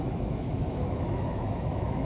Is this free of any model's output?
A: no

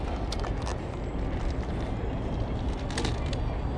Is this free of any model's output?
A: yes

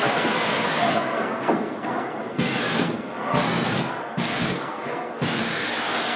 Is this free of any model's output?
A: no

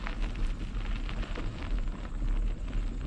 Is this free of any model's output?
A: yes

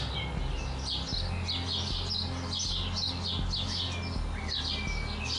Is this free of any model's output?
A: yes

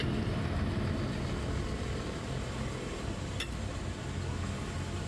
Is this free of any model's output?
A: yes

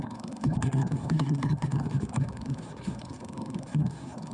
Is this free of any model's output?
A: no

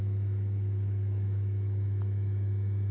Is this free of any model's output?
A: no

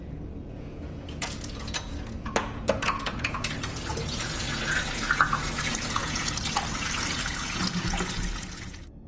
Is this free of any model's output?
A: no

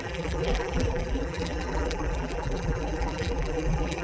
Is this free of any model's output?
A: no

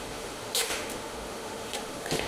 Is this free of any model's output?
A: no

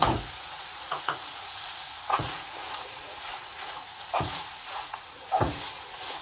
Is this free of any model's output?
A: no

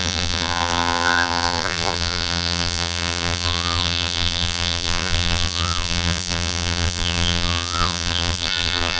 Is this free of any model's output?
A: no